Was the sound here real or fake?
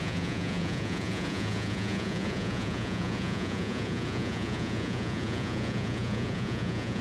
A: fake